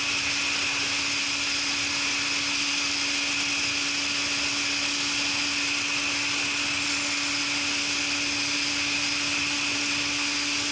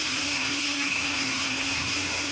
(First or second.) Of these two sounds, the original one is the first